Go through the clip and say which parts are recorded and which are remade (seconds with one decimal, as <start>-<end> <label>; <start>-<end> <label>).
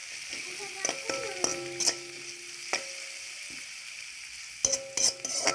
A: 0.0-5.5 recorded